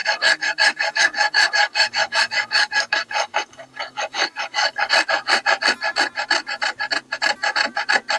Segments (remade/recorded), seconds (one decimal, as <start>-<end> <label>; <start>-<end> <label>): 0.0-4.9 remade; 4.9-8.2 recorded